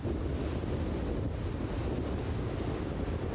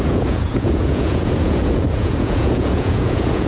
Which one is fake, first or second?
second